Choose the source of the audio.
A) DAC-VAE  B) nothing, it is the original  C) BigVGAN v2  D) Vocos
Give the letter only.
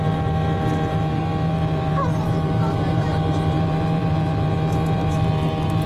C